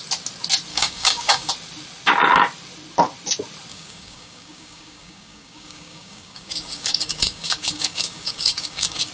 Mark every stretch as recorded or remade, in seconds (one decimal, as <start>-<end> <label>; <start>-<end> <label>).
0.0-0.7 recorded; 0.7-1.5 remade; 1.5-3.7 recorded; 3.7-9.1 remade